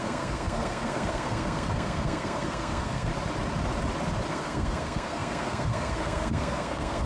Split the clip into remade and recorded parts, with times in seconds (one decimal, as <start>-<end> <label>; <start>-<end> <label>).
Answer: 0.0-3.1 remade; 3.1-4.3 recorded; 4.3-7.1 remade